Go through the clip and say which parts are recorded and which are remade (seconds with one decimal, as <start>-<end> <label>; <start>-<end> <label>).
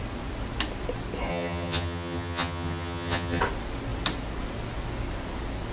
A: 0.0-1.3 recorded; 1.3-3.4 remade; 3.4-5.7 recorded